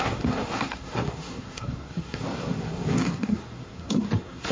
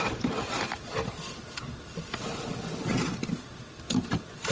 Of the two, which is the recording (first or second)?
second